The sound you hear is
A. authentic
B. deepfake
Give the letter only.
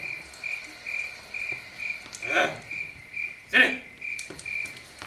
A